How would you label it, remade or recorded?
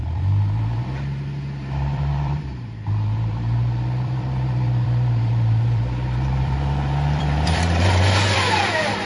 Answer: remade